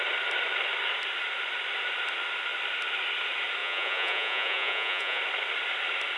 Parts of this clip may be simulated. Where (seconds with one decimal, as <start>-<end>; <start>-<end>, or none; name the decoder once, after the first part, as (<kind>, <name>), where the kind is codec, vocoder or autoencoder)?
3.6-5.2 (vocoder, Vocos)